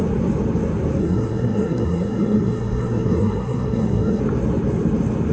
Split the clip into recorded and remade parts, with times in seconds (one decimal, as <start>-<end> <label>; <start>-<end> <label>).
0.0-1.0 recorded; 1.0-4.2 remade; 4.2-5.3 recorded